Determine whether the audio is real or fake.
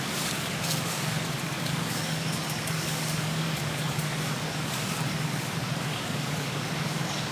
fake